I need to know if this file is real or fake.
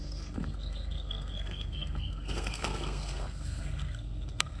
fake